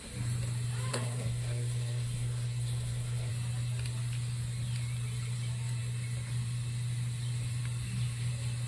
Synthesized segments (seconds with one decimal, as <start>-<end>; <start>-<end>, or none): 0.9-3.3